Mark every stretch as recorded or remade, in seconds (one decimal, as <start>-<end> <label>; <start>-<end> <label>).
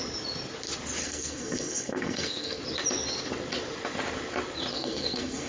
0.0-1.0 recorded; 1.0-2.6 remade; 2.6-4.7 recorded; 4.7-5.5 remade